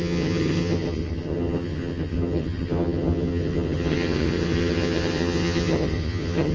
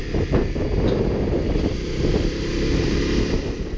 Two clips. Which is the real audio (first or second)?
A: second